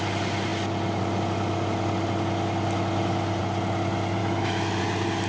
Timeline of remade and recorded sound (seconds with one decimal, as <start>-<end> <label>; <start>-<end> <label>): 0.0-4.2 recorded; 4.2-4.8 remade; 4.8-5.3 recorded